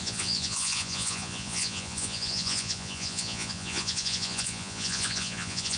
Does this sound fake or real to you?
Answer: fake